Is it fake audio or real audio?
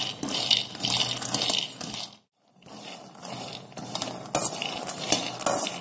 real